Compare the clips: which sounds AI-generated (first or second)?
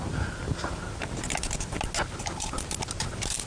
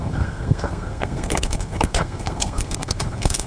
second